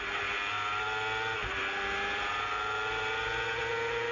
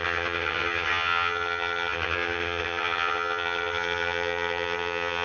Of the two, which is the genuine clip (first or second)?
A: first